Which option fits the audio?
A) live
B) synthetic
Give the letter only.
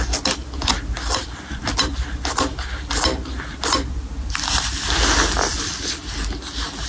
A